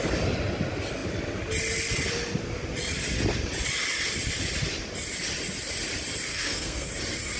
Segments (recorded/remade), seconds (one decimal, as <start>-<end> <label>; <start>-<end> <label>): 0.0-6.3 recorded; 6.3-6.9 remade; 6.9-7.4 recorded